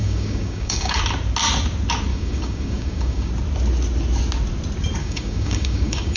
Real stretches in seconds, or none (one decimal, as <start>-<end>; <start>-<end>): 1.0-2.1; 3.3-5.0